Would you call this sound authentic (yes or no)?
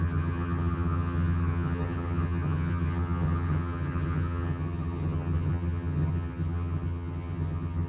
no